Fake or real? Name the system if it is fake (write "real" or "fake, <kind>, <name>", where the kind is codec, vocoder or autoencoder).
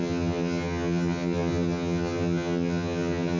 fake, vocoder, HiFi-GAN